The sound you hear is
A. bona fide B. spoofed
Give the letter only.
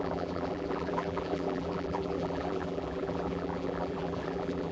B